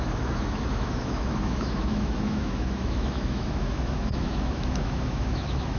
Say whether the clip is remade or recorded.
remade